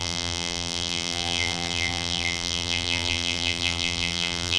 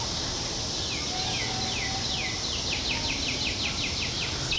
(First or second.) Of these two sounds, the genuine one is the second